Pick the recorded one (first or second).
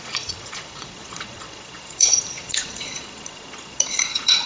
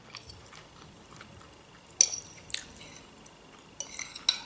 second